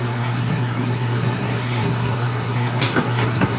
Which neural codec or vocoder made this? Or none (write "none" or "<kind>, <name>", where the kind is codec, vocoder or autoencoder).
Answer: codec, SNAC